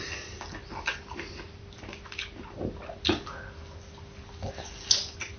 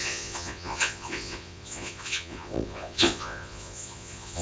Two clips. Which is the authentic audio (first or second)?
first